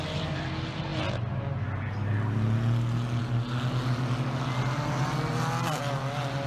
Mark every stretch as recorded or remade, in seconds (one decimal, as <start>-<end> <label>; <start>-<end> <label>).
0.0-6.5 recorded